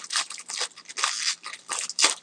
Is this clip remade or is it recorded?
recorded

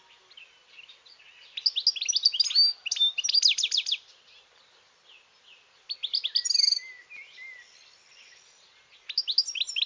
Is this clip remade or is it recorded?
recorded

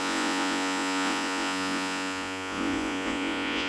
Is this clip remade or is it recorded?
remade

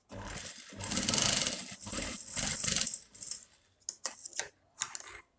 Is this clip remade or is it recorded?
recorded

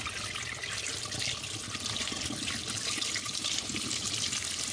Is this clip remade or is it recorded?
recorded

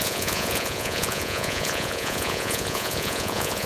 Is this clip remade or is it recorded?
remade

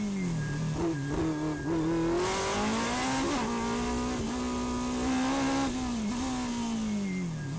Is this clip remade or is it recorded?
recorded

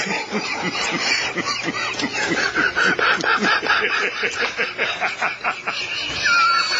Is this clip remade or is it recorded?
recorded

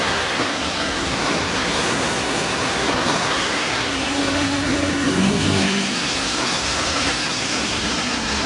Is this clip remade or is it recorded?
remade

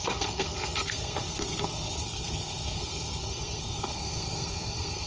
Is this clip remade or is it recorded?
remade